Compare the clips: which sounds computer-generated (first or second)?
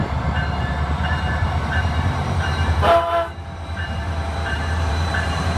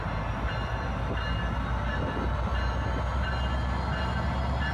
first